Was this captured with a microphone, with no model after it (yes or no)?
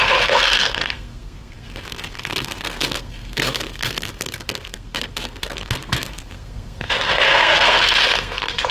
no